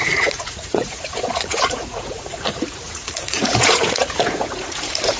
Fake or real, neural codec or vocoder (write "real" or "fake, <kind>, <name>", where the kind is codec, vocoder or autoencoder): fake, vocoder, Vocos